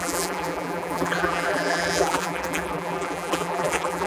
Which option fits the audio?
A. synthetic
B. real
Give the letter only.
A